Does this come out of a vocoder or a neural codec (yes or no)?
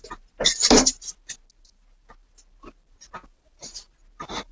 no